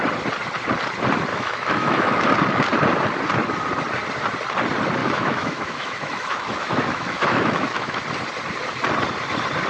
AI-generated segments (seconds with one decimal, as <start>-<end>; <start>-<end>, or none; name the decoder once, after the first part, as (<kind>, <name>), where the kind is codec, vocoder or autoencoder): 1.3-2.2 (autoencoder, DAC-VAE); 5.0-8.0